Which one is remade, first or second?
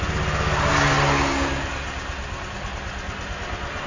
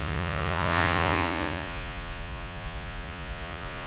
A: second